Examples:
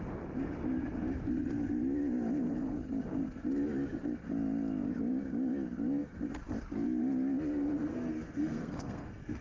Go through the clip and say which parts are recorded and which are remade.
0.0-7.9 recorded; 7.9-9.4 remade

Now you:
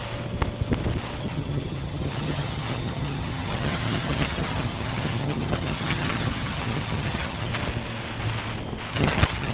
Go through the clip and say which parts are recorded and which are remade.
0.0-1.2 recorded; 1.2-7.5 remade; 7.5-8.9 recorded; 8.9-9.5 remade

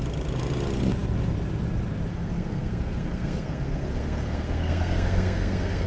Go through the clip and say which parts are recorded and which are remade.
0.0-2.1 recorded; 2.1-5.9 remade

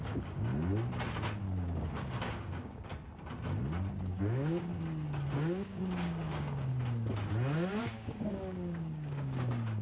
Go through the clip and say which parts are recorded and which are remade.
0.0-0.5 remade; 0.5-1.4 recorded; 1.4-2.9 remade; 2.9-4.0 recorded; 4.0-4.7 remade; 4.7-5.3 recorded; 5.3-6.7 remade; 6.7-7.8 recorded; 7.8-9.8 remade